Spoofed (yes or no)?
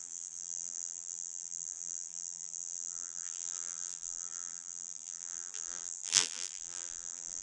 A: yes